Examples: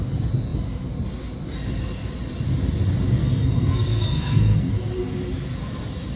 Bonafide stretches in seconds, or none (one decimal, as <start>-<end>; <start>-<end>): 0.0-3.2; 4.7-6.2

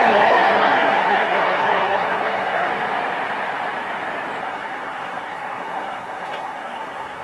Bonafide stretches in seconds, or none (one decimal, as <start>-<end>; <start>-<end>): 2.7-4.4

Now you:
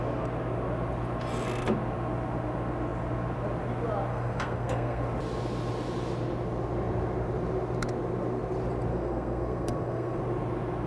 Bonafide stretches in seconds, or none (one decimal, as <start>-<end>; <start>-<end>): 0.0-4.1; 5.0-8.9; 10.2-10.9

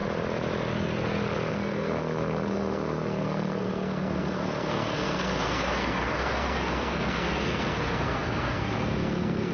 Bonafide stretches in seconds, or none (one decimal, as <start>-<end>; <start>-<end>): 0.0-1.5

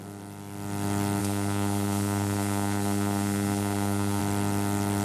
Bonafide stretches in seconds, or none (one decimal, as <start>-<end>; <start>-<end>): 0.0-1.2; 4.2-5.0

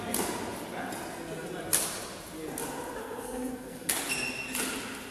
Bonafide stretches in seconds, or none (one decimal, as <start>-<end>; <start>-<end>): 0.0-3.0; 3.9-5.1

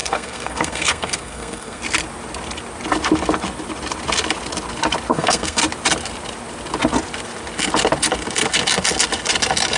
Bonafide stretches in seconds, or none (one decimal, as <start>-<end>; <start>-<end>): 1.8-5.1; 5.6-9.8

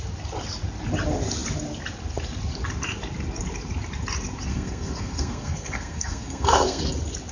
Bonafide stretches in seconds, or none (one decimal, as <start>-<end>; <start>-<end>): 0.0-4.5; 6.8-7.3